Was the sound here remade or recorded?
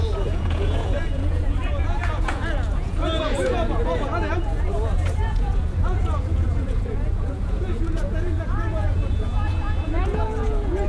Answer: remade